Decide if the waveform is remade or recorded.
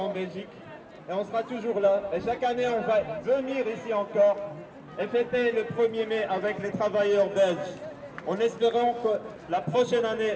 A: recorded